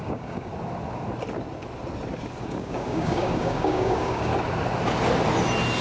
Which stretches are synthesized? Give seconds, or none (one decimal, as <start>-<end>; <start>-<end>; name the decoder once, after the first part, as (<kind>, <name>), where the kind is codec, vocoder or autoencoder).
0.0-0.5 (codec, DAC); 2.4-4.3